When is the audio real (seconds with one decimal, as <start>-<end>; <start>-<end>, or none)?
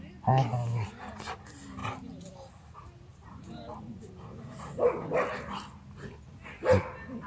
0.0-3.1; 4.0-7.3